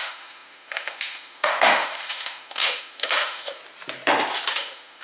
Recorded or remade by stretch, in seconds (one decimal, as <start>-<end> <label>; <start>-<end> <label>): 0.0-3.6 remade; 3.6-4.5 recorded; 4.5-5.0 remade